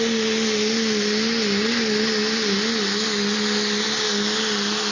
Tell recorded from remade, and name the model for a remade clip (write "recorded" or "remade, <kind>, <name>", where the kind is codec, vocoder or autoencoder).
recorded